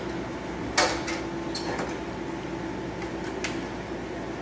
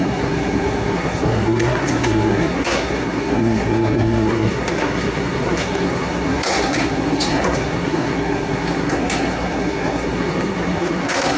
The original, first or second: first